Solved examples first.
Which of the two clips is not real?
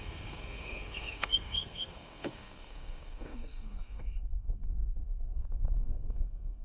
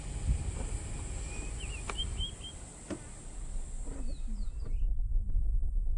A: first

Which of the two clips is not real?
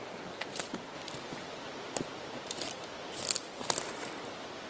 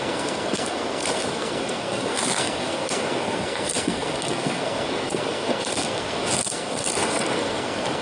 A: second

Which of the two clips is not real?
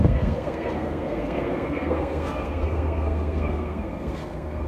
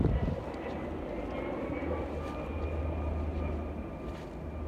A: first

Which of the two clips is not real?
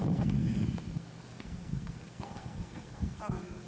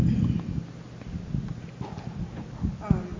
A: first